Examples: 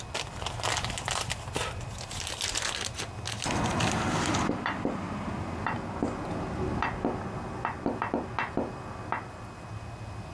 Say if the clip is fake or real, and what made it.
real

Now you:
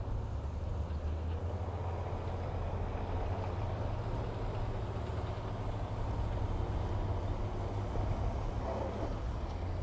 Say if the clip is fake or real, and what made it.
real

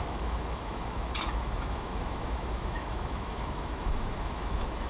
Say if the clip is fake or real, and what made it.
fake, autoencoder, DAC-VAE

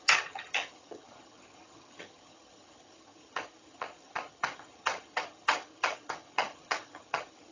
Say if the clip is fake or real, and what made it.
fake, vocoder, HiFi-GAN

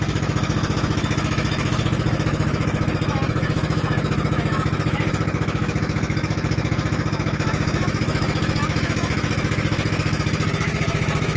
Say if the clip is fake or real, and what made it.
fake, autoencoder, DAC-VAE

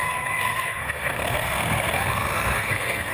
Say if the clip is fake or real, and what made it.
fake, codec, SNAC